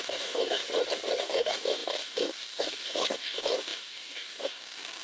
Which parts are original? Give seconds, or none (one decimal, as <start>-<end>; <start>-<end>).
0.6-1.2

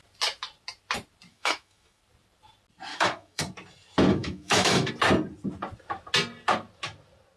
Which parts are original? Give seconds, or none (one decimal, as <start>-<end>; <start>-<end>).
0.0-1.3; 2.0-2.9; 3.4-4.1; 4.9-7.4

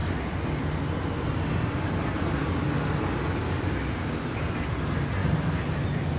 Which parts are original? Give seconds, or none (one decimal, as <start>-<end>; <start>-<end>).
0.0-6.2

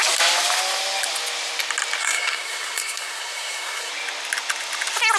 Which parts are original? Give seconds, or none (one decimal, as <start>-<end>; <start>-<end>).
0.0-2.0; 3.9-5.2

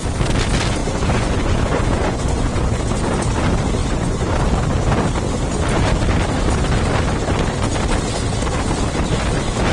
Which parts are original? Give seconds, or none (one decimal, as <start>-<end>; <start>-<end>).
0.0-0.8; 2.8-3.8; 4.4-9.7

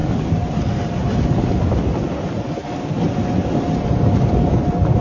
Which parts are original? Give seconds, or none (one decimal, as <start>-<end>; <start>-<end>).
0.0-5.0

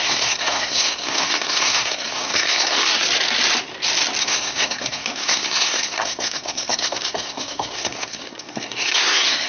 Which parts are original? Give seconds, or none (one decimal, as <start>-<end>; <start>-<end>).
2.8-4.2

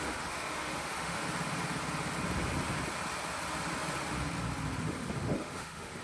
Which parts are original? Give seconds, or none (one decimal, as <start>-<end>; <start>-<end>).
1.2-4.8